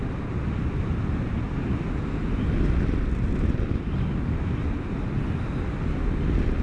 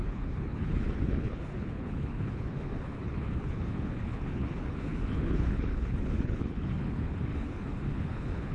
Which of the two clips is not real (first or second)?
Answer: second